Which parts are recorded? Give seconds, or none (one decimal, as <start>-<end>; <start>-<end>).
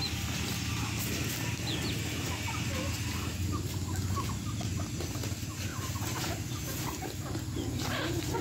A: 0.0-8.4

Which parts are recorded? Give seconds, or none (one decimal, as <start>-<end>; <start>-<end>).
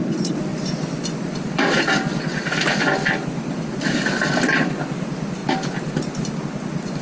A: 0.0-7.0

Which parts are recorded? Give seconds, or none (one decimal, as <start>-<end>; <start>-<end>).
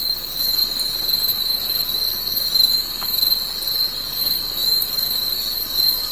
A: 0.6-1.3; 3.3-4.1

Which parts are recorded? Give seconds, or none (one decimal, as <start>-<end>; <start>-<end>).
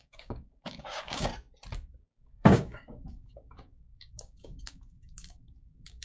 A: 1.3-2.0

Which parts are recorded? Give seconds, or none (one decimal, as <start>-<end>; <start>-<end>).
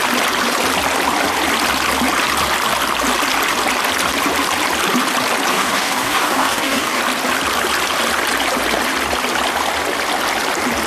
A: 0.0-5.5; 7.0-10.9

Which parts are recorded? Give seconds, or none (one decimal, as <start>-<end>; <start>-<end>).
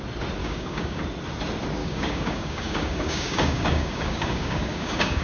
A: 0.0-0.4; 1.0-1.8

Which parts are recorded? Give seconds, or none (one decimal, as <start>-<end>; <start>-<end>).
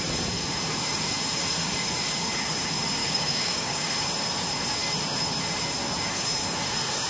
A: 0.0-3.0; 3.9-7.1